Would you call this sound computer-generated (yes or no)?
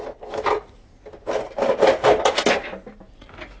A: no